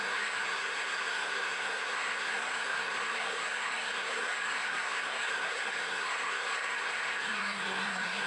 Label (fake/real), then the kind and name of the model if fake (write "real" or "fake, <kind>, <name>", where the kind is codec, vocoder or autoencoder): fake, codec, SNAC